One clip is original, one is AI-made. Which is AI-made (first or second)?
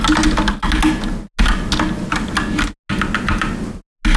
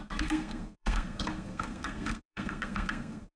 second